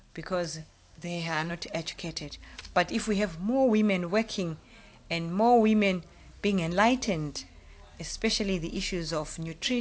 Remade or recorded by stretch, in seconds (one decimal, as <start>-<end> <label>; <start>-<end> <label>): 0.0-0.6 recorded; 0.6-1.5 remade; 1.5-9.8 recorded